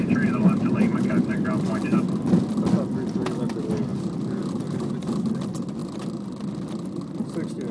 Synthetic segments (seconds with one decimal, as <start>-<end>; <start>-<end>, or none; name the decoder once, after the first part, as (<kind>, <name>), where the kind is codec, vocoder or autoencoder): 3.9-5.3 (vocoder, BigVGAN v2); 5.8-7.0